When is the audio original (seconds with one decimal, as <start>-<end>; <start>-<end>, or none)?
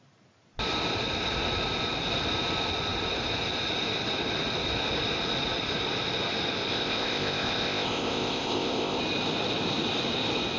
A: 0.0-6.7; 9.0-10.6